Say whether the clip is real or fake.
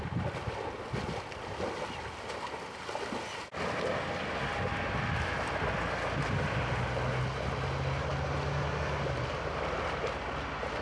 real